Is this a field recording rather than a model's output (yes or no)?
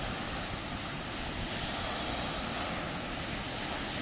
yes